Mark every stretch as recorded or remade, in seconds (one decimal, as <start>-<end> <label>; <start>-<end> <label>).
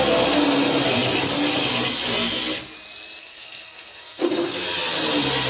0.0-3.2 recorded; 3.2-4.3 remade; 4.3-5.5 recorded